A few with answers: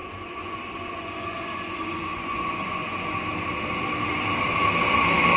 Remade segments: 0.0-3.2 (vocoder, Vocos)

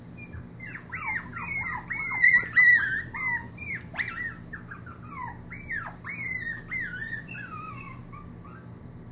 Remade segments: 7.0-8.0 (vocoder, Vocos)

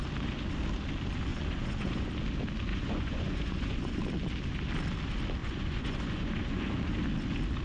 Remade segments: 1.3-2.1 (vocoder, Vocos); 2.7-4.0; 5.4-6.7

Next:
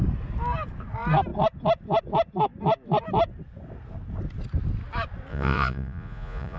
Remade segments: 5.3-6.6 (vocoder, Vocos)